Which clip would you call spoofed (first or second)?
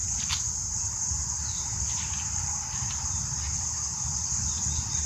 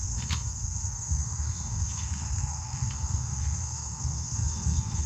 second